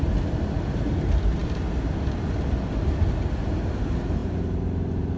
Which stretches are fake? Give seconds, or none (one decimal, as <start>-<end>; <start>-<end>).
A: none

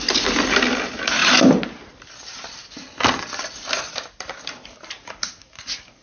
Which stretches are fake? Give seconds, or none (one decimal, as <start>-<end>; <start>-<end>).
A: none

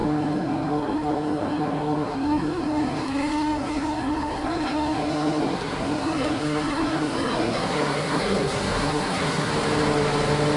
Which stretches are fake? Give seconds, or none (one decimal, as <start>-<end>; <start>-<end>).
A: 0.0-9.5

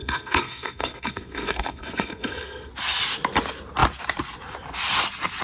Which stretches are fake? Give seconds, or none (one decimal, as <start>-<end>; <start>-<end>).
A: 0.0-2.7